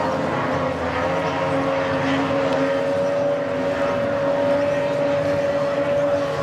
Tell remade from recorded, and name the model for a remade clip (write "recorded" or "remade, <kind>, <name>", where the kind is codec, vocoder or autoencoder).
recorded